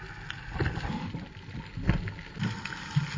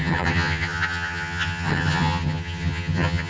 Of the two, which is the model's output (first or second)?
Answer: second